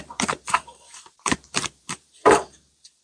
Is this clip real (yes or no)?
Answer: no